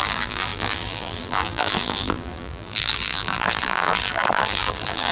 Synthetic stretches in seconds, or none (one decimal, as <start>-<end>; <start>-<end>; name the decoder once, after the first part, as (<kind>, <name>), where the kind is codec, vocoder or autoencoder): 0.0-5.1 (vocoder, BigVGAN v2)